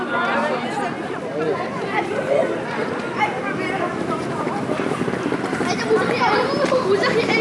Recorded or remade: recorded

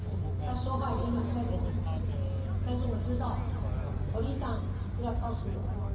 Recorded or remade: recorded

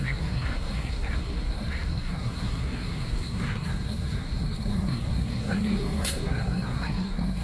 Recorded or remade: remade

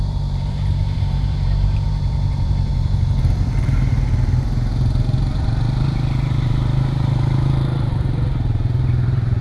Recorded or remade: remade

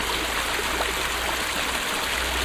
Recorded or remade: recorded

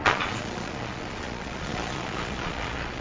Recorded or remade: remade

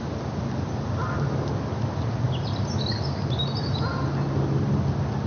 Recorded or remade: recorded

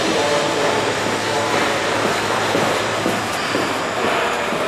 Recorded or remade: recorded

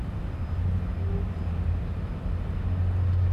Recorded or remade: recorded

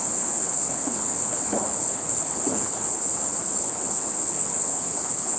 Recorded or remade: remade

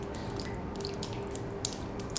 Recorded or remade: recorded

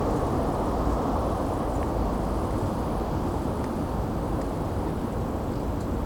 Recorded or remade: recorded